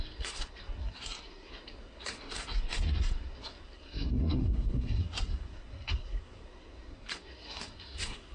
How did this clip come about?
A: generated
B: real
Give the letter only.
A